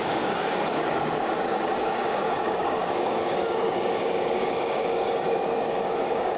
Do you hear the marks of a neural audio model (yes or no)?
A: yes